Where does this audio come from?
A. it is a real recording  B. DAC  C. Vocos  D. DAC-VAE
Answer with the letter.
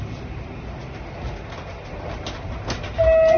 A